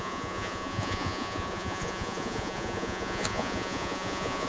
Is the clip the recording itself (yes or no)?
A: no